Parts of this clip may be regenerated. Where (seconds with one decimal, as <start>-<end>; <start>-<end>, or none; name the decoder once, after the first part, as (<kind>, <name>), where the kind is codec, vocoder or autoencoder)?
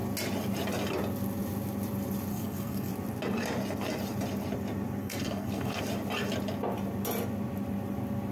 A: 2.3-2.9 (codec, SNAC); 5.0-5.8